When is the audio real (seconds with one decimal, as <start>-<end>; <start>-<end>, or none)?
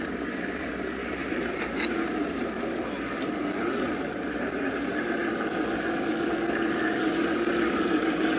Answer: 0.0-1.0; 1.8-8.4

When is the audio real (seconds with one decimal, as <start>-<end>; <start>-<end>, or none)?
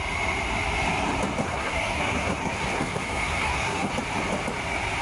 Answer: 0.0-1.4; 3.9-5.0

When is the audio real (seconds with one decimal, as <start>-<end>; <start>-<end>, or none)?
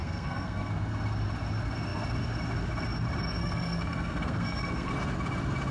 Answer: 0.7-3.4; 4.9-5.7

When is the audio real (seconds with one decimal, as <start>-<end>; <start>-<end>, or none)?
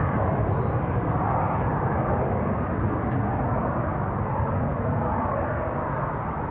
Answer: 0.0-6.5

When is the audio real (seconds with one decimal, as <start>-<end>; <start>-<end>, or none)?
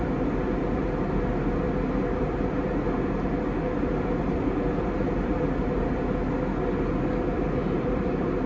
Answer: 0.0-8.5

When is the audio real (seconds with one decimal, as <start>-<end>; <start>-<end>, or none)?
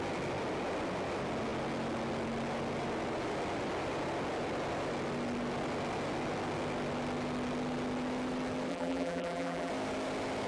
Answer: 0.0-8.7; 9.7-10.5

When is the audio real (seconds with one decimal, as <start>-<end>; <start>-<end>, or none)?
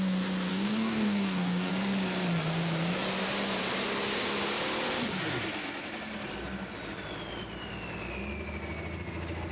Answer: 0.0-0.5; 1.7-9.5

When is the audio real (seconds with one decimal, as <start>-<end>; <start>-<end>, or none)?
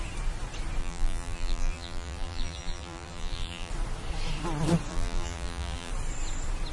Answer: 0.0-0.8; 3.7-4.9; 5.9-6.7